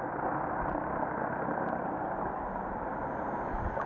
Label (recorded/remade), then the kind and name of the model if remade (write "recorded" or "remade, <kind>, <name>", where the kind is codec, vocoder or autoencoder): recorded